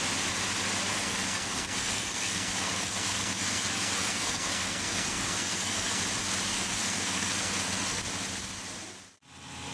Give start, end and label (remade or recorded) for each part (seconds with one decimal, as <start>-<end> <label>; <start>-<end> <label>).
0.0-0.9 recorded; 0.9-6.0 remade; 6.0-6.5 recorded; 6.5-8.0 remade; 8.0-9.7 recorded